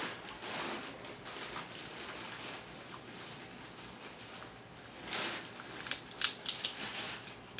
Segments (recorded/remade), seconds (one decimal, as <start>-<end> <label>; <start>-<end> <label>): 0.0-7.6 recorded